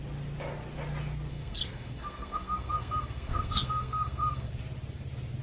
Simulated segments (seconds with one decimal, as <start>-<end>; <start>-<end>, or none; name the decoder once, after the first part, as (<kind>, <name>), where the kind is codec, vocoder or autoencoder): 1.3-4.5 (codec, SNAC)